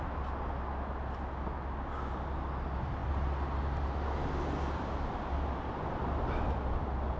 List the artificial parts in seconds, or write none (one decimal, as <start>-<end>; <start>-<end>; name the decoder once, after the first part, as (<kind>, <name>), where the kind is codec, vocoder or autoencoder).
none